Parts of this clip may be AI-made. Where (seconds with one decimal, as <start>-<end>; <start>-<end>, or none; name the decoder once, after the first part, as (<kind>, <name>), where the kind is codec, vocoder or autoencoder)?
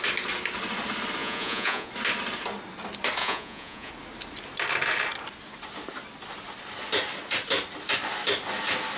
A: 1.2-1.9 (vocoder, Vocos); 3.2-3.9